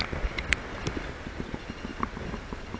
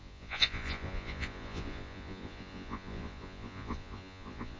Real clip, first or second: first